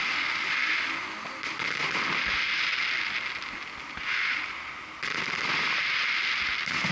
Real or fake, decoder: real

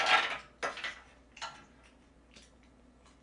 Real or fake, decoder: real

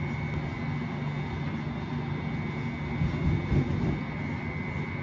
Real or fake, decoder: real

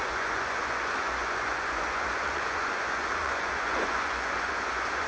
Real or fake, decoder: fake, vocoder, Vocos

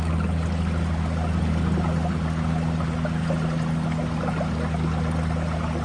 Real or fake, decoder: real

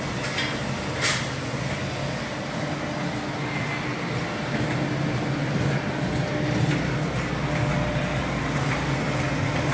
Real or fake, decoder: real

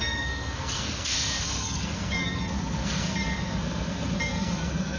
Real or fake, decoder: fake, codec, SNAC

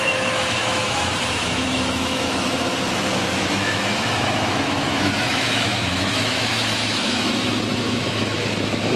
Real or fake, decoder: fake, autoencoder, DAC-VAE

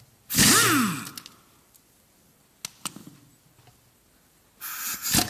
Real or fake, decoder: real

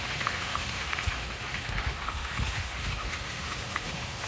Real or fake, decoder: fake, autoencoder, DAC-VAE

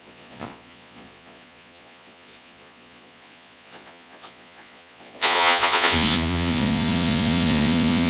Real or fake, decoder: fake, vocoder, Vocos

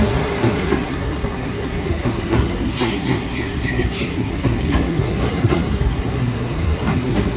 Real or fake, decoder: fake, codec, SNAC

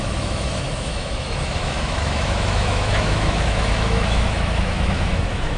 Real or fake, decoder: fake, autoencoder, DAC-VAE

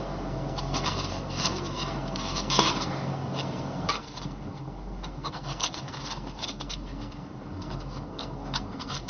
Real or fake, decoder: fake, codec, SNAC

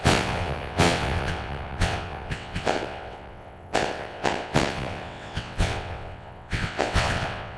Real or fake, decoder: fake, vocoder, WaveNeXt